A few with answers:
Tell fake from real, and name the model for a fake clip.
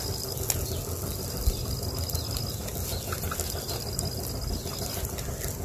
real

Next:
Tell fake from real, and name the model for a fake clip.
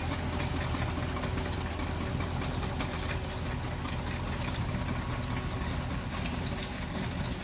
real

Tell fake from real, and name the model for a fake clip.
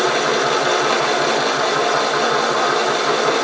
real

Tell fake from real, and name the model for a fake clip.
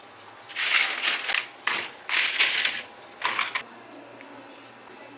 real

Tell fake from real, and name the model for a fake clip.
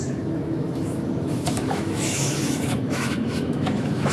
fake, autoencoder, DAC-VAE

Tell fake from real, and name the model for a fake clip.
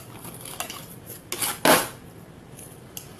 real